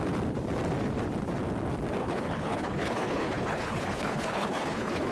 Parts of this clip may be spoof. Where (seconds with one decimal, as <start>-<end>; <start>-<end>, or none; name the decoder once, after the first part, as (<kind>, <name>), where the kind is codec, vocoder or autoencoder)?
2.0-5.1 (codec, HILCodec)

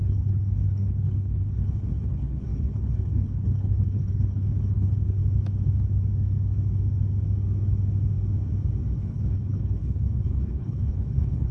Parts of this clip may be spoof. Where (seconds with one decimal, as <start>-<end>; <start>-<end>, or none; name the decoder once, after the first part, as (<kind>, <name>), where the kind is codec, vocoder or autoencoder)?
0.0-5.2 (codec, HILCodec); 9.0-11.5